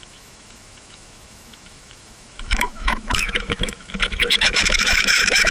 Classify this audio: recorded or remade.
remade